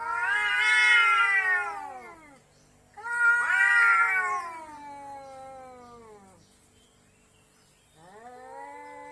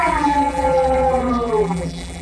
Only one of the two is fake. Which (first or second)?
second